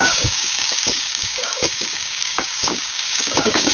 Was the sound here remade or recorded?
remade